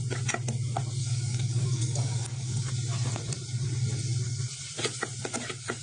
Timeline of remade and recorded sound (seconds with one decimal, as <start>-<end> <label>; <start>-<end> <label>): 0.0-1.0 recorded; 1.0-2.7 remade; 2.7-5.8 recorded